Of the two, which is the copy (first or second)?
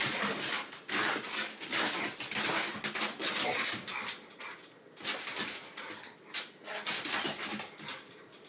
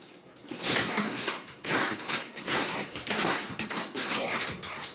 second